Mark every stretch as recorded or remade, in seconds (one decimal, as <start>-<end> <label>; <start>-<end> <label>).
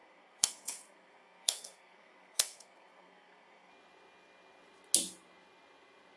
0.0-3.7 remade; 3.7-6.2 recorded